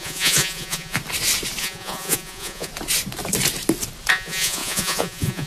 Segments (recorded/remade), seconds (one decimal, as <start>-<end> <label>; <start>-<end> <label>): 0.0-1.0 remade; 1.0-1.6 recorded; 1.6-2.7 remade; 2.7-4.1 recorded; 4.1-5.5 remade